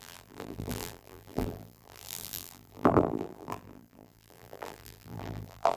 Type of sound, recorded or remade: remade